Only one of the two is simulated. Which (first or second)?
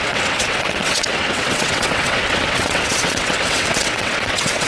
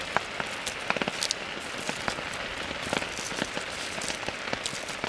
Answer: first